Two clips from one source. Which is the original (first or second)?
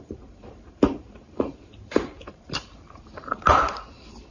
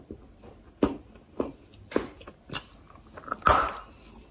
second